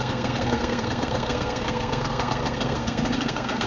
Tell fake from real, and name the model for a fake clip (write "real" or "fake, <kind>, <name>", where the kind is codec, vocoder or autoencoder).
fake, codec, SNAC